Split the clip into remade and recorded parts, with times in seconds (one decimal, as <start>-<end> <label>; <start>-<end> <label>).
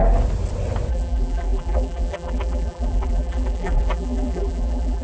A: 0.0-0.9 recorded; 0.9-5.0 remade